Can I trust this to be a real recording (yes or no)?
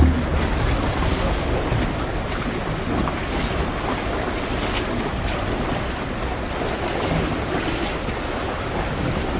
yes